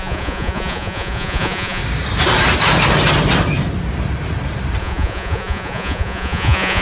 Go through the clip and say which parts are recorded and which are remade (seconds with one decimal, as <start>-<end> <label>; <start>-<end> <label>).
0.0-1.8 remade; 1.8-4.8 recorded; 4.8-6.8 remade

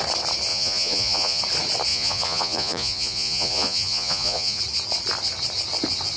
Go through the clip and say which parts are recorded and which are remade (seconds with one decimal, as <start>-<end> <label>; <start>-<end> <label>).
0.0-0.5 recorded; 0.5-1.4 remade; 1.4-1.9 recorded; 1.9-4.6 remade; 4.6-6.2 recorded